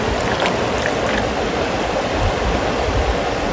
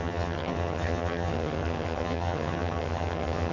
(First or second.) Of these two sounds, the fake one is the second